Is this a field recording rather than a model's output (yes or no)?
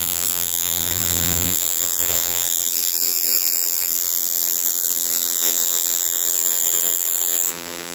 no